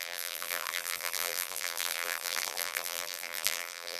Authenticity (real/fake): fake